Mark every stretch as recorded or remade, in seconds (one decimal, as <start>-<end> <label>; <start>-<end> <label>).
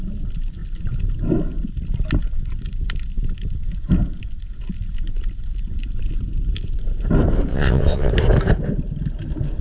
0.0-7.5 recorded; 7.5-8.1 remade; 8.1-9.6 recorded